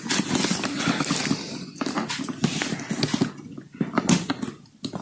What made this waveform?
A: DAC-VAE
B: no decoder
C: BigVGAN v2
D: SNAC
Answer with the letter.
B